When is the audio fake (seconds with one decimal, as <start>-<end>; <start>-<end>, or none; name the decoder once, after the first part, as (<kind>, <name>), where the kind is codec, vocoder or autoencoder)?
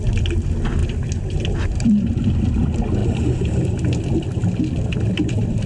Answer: 0.8-1.4 (vocoder, BigVGAN v2)